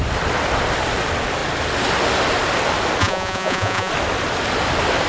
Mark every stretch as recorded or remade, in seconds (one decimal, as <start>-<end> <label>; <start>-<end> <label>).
0.0-3.0 recorded; 3.0-3.9 remade; 3.9-5.1 recorded